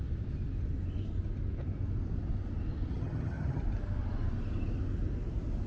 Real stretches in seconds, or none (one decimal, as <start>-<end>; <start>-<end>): 0.0-2.9; 3.6-5.7